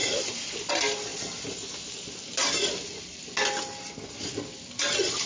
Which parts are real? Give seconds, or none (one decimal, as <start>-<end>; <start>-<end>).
0.0-5.3

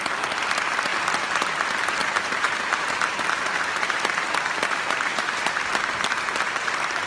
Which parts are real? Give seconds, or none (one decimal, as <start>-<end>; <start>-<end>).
0.0-2.0; 5.6-7.1

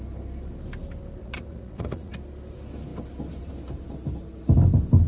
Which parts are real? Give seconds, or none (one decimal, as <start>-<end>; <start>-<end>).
0.0-1.2; 2.1-5.1

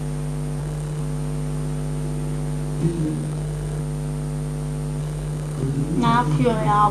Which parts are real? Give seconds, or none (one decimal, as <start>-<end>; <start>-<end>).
0.0-0.6; 1.0-2.8; 3.8-5.0; 5.8-6.9